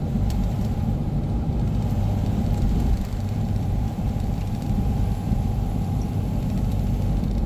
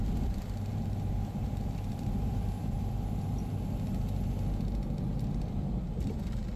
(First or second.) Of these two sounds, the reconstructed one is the first